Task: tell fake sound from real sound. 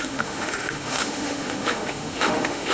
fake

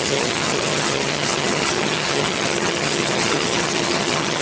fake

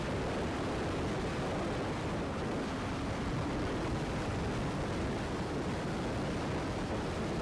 real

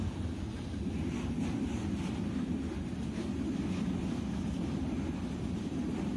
real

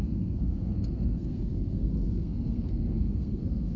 fake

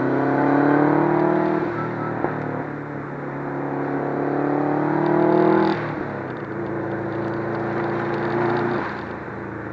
real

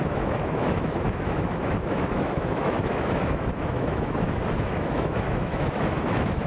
fake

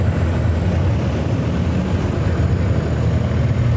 real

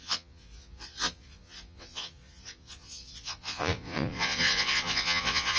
fake